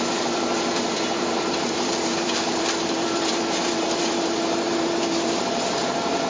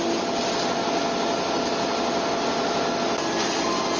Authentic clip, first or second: second